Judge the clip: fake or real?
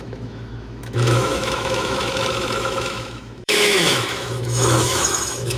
fake